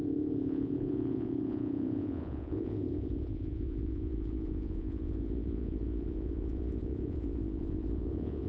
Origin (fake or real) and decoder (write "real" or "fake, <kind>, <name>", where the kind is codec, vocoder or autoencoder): fake, vocoder, Vocos